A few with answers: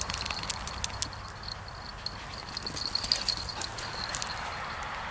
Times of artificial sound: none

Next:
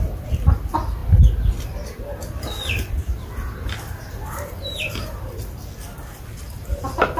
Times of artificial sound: none

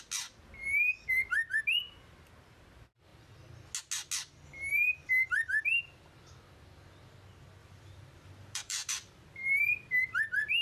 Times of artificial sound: 7.6-8.9 (vocoder, BigVGAN v2)